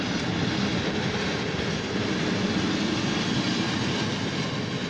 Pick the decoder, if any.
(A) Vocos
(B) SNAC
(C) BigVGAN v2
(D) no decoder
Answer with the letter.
D